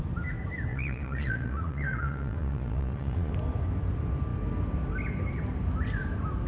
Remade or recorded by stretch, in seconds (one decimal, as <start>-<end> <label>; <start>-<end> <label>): 0.0-0.7 recorded; 0.7-3.3 remade; 3.3-6.5 recorded